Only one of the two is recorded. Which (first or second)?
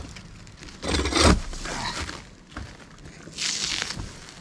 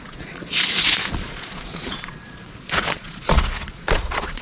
first